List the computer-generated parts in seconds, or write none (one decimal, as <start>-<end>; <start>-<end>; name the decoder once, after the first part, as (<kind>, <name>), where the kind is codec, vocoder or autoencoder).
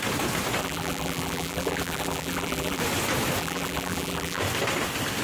0.6-2.8 (vocoder, BigVGAN v2); 3.4-4.4